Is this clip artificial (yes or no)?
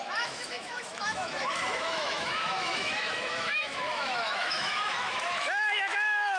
yes